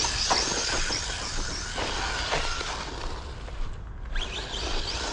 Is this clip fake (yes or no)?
no